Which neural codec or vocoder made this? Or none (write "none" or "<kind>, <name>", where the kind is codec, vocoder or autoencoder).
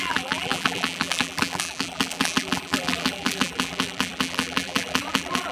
vocoder, BigVGAN v2